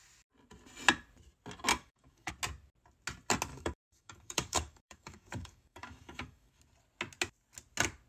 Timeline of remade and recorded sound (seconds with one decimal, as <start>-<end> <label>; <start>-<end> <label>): 0.0-1.7 recorded; 1.7-2.3 remade; 2.3-3.5 recorded; 3.5-6.6 remade; 6.6-8.1 recorded